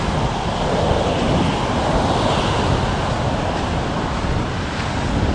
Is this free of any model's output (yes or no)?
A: yes